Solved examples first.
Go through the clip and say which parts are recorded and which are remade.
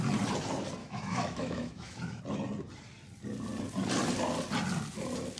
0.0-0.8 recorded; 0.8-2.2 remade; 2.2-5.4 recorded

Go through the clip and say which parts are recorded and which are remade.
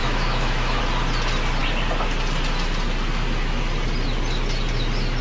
0.0-0.8 remade; 0.8-5.2 recorded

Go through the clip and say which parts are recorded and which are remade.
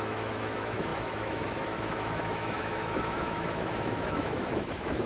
0.0-5.1 remade